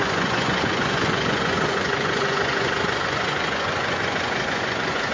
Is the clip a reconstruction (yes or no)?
yes